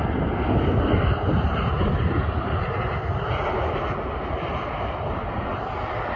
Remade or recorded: recorded